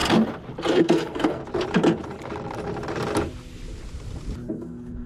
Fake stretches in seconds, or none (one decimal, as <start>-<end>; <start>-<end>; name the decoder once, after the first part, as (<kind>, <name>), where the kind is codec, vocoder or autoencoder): 0.7-1.4 (codec, SNAC); 4.5-5.1